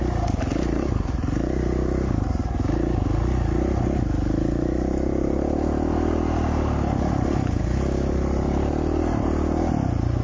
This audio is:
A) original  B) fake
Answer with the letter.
A